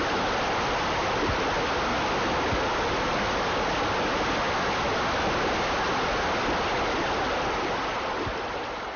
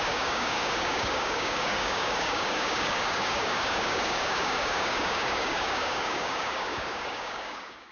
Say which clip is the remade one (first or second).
second